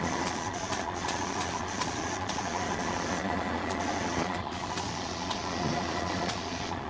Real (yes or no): no